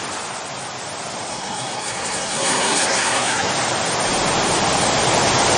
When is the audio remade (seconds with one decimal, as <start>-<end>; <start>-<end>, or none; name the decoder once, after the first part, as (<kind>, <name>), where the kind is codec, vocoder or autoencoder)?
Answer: 1.3-3.5 (codec, SNAC)